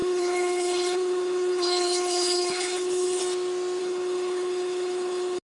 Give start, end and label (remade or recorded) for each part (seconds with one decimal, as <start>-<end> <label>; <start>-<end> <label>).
0.0-3.2 remade; 3.2-3.8 recorded; 3.8-5.4 remade

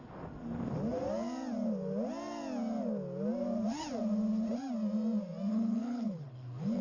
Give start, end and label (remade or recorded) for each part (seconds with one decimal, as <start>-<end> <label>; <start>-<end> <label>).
0.0-5.5 recorded; 5.5-6.8 remade

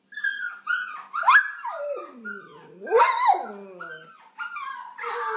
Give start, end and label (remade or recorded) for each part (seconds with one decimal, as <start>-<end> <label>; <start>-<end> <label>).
0.0-5.4 recorded

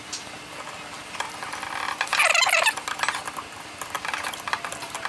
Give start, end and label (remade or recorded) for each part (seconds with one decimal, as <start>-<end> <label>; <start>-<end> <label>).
0.0-5.1 recorded

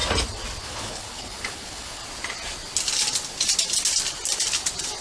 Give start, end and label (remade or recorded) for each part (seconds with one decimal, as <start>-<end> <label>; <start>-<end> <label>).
0.0-0.6 recorded; 0.6-2.0 remade; 2.0-5.0 recorded